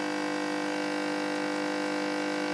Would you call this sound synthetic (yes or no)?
no